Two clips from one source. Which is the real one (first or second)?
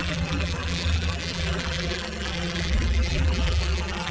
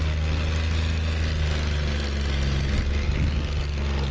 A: second